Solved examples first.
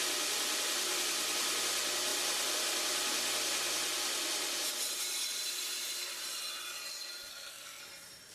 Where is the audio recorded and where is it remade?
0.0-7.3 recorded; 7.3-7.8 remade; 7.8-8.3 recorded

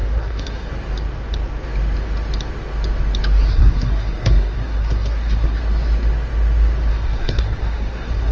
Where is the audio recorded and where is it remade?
0.0-0.7 remade; 0.7-3.5 recorded; 3.5-5.6 remade; 5.6-6.9 recorded; 6.9-8.3 remade

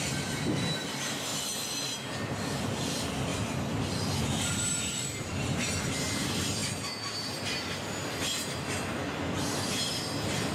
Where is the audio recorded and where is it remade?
0.0-10.5 recorded

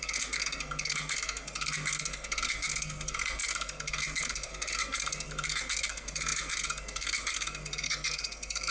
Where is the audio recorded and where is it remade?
0.0-8.7 remade

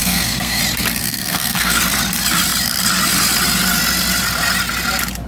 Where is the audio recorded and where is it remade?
0.0-0.6 remade; 0.6-1.0 recorded; 1.0-1.8 remade; 1.8-5.3 recorded

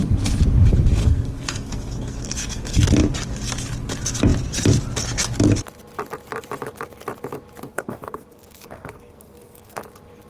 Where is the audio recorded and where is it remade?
0.0-1.0 recorded; 1.0-2.8 remade; 2.8-7.7 recorded; 7.7-9.8 remade; 9.8-10.3 recorded

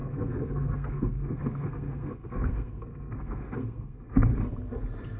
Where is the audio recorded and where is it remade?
0.0-4.3 remade; 4.3-5.2 recorded